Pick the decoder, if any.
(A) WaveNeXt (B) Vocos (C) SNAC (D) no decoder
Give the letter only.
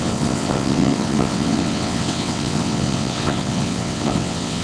A